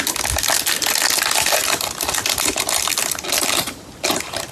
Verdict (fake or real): real